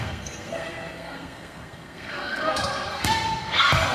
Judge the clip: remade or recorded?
remade